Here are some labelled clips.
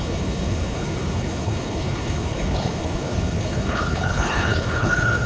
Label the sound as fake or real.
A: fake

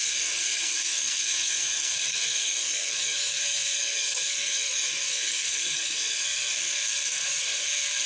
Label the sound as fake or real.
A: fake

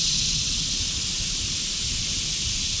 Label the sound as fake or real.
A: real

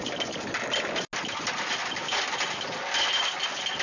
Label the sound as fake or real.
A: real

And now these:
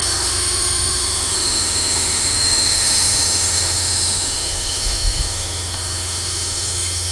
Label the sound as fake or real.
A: fake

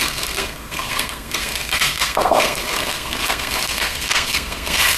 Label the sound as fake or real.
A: fake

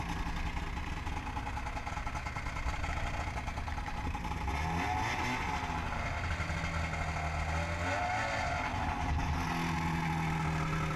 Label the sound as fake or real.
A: real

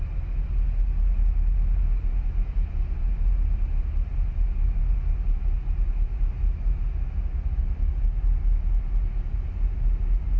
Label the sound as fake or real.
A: real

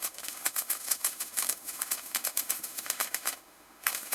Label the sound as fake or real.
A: fake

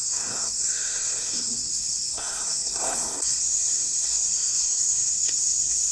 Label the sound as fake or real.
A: fake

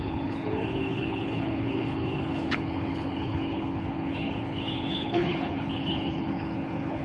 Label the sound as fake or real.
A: fake